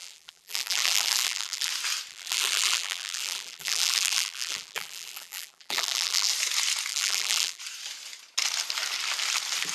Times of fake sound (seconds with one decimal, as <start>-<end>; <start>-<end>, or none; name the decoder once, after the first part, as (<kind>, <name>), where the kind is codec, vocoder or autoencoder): 0.0-1.7 (vocoder, BigVGAN v2); 2.1-6.3; 6.9-7.6